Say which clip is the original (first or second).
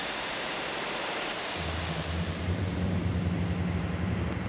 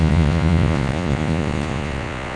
first